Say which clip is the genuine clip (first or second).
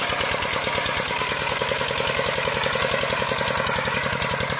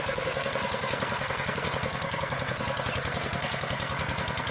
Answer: first